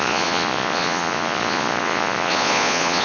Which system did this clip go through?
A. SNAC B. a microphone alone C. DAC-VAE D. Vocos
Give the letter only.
D